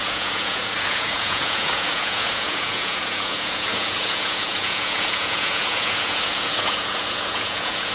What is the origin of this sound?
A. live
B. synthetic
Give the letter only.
B